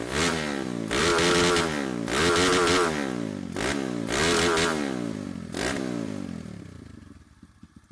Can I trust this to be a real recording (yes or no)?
yes